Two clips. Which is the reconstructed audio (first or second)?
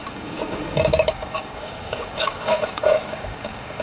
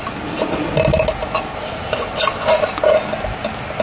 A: first